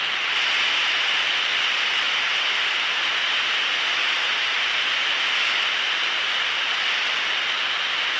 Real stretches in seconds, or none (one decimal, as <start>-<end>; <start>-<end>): 0.0-8.2

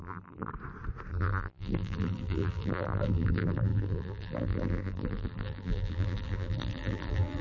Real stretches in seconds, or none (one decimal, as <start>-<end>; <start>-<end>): 0.5-1.1

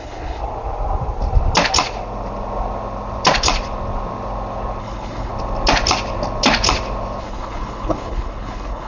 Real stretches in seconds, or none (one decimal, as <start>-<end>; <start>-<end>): 0.4-4.8; 5.3-7.2

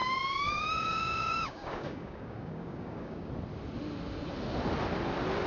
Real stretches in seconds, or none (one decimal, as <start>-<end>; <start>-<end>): 3.3-5.5

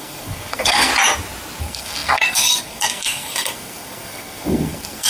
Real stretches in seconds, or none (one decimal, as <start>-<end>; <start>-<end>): 0.9-1.6

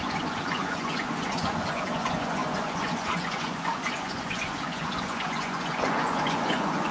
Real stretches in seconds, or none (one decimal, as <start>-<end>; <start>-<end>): none

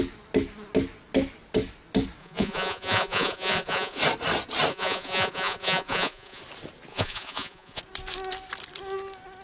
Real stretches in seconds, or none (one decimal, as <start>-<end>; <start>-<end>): 0.0-2.2; 4.0-4.7; 6.4-6.9; 7.8-9.4